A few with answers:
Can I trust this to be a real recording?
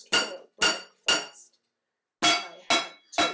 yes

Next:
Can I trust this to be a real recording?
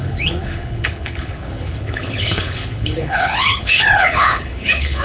no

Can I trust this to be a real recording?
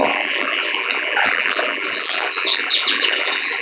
no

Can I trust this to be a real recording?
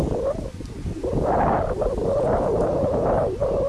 yes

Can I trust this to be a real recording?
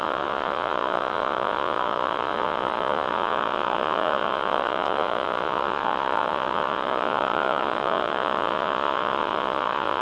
no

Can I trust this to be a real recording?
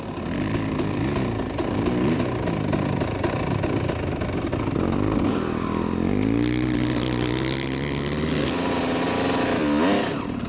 yes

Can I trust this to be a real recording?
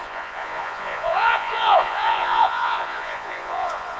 no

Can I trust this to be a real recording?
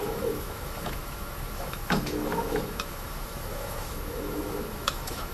no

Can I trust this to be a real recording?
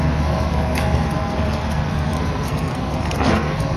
no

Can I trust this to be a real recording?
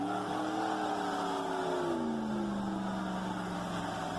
yes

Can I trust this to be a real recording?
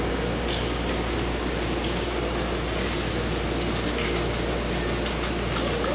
yes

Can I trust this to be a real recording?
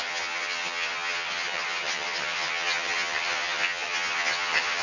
no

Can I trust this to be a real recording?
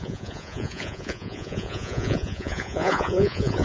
no